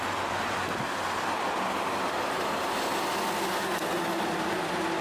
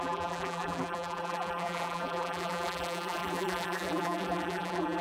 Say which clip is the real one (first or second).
first